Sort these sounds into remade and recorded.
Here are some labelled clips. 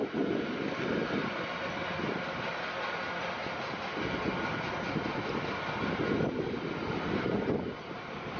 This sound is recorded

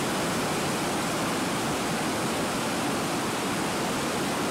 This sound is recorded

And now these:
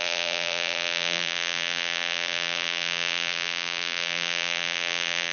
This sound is remade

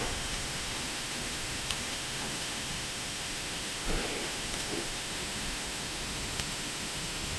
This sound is remade